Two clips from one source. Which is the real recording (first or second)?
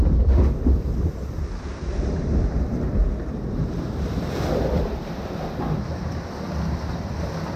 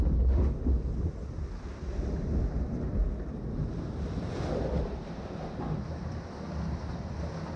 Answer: second